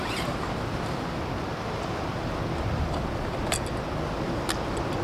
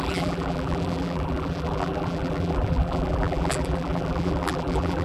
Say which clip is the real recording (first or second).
first